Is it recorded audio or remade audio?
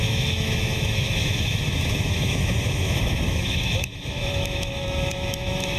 remade